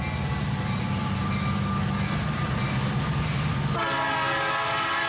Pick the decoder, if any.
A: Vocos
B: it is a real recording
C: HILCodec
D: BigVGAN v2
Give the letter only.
B